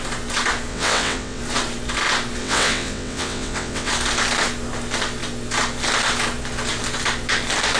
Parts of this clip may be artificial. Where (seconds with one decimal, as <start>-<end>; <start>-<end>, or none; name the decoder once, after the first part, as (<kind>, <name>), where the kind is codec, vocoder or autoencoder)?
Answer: 0.7-1.4 (vocoder, WaveNeXt); 2.4-3.9